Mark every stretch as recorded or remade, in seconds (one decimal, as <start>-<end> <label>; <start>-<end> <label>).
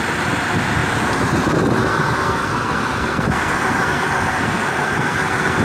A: 0.0-1.9 recorded; 1.9-5.6 remade